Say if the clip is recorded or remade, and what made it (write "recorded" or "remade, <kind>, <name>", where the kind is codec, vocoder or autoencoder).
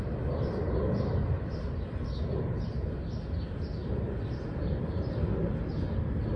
recorded